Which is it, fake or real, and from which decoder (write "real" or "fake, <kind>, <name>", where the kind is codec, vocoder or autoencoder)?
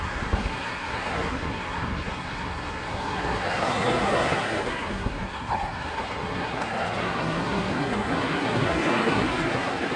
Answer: fake, codec, SNAC